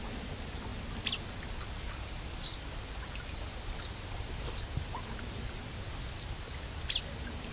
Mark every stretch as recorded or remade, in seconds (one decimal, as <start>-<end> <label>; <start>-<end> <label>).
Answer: 0.0-7.5 recorded

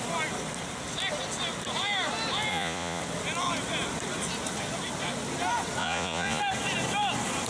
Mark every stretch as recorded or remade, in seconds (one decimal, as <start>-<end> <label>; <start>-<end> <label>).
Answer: 0.0-2.5 recorded; 2.5-3.0 remade; 3.0-5.8 recorded; 5.8-6.4 remade; 6.4-7.5 recorded

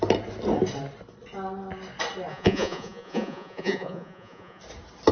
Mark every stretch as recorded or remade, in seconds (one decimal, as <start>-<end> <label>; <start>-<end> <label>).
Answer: 0.0-2.3 recorded; 2.3-4.6 remade; 4.6-5.1 recorded

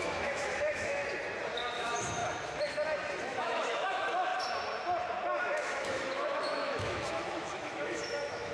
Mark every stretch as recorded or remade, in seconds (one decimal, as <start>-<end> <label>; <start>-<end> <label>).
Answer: 0.0-1.0 remade; 1.0-1.7 recorded; 1.7-2.2 remade; 2.2-3.2 recorded; 3.2-4.3 remade; 4.3-5.4 recorded; 5.4-8.5 remade

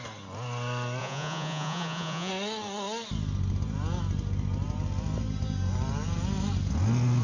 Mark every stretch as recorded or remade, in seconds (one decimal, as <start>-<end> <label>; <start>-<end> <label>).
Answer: 0.0-1.0 recorded; 1.0-2.3 remade; 2.3-7.2 recorded